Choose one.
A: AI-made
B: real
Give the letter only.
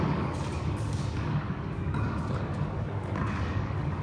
A